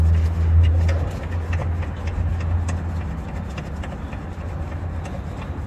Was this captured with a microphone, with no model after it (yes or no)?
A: yes